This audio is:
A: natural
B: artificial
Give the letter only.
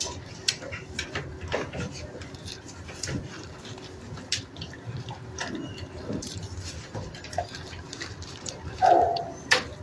B